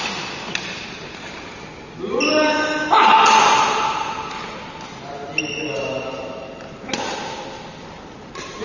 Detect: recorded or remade recorded